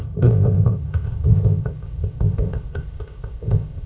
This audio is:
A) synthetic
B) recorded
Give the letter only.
A